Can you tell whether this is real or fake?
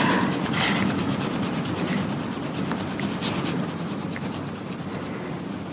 real